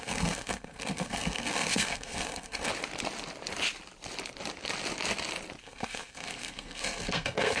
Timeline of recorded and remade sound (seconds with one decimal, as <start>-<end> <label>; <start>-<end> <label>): 0.0-2.7 remade; 2.7-5.6 recorded; 5.6-7.6 remade

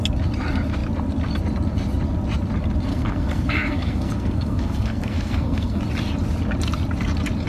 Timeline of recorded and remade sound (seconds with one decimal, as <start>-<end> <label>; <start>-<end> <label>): 0.0-2.9 recorded; 2.9-5.8 remade; 5.8-7.5 recorded

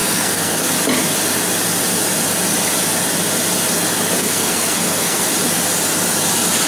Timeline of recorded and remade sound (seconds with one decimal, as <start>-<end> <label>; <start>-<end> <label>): 0.0-0.7 remade; 0.7-4.2 recorded; 4.2-5.3 remade; 5.3-6.7 recorded

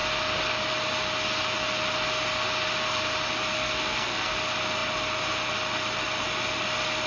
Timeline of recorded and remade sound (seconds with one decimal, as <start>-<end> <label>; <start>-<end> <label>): 0.0-3.5 recorded; 3.5-4.3 remade; 4.3-7.1 recorded

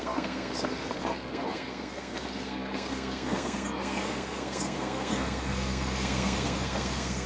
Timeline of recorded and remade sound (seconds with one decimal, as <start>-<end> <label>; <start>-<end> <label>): 0.0-7.3 remade

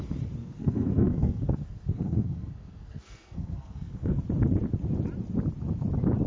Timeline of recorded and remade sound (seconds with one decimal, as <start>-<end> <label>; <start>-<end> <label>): 0.0-0.4 recorded; 0.4-4.2 remade; 4.2-6.3 recorded

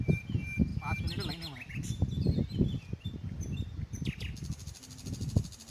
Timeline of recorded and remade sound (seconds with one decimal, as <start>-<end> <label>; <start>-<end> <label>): 0.0-5.7 recorded